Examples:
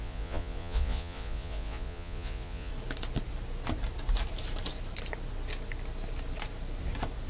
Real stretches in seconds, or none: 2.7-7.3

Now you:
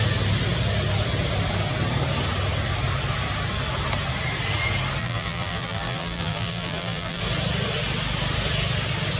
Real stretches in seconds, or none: 0.0-5.0; 7.2-9.2

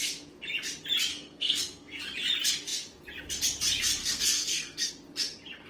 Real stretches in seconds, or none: 0.0-1.1; 2.0-4.0; 4.9-5.7

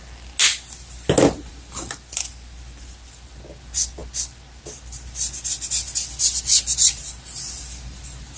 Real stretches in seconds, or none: 0.0-8.4

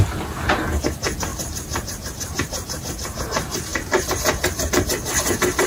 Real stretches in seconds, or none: 0.0-1.3; 3.2-3.7; 4.7-5.7

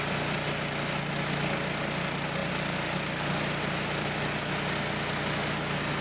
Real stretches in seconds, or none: 0.0-6.0

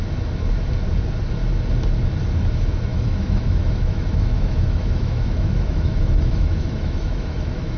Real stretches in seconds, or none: 0.0-2.9